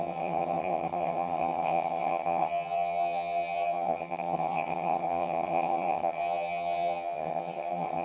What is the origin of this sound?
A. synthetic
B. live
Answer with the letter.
A